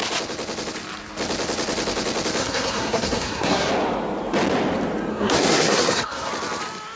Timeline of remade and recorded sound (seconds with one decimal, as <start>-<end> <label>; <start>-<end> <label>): 0.0-2.4 recorded; 2.4-3.7 remade; 3.7-5.1 recorded; 5.1-6.3 remade; 6.3-7.0 recorded